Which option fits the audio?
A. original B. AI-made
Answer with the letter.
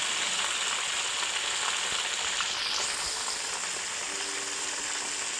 A